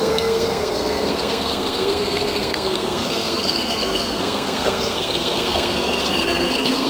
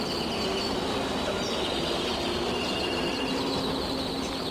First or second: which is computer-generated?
first